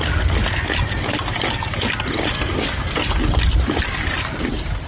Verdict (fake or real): real